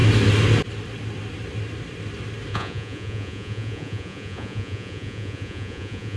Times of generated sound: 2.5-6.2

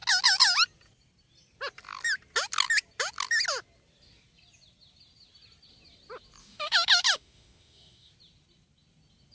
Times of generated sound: 6.4-8.1

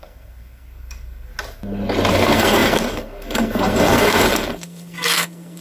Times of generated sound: 0.0-1.3; 2.1-5.6